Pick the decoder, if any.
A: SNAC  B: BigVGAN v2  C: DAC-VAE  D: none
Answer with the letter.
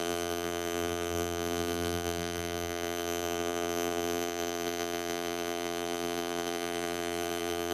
B